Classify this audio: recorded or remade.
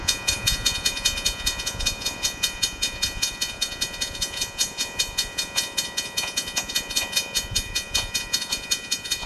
remade